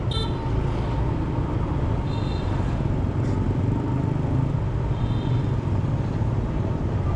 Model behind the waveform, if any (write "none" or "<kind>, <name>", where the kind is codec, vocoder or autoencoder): none